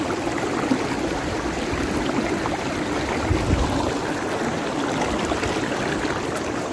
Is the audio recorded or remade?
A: recorded